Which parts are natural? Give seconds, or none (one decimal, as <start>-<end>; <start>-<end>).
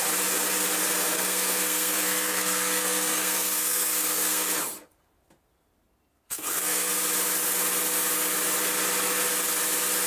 0.0-1.1; 4.5-6.3; 6.9-10.1